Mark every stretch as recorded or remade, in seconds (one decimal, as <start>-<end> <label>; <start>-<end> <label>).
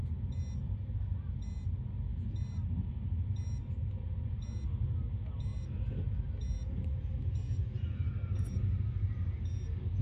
0.0-10.0 recorded